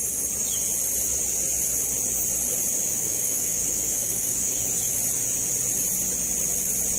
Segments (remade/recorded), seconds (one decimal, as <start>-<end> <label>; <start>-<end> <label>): 0.0-2.9 recorded; 2.9-4.9 remade; 4.9-7.0 recorded